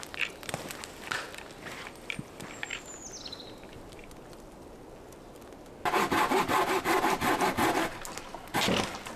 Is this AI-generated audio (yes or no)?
no